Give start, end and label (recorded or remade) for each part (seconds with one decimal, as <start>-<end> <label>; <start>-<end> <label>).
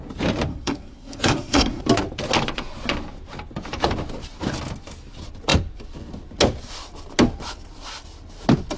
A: 0.0-0.5 recorded; 0.5-1.8 remade; 1.8-8.8 recorded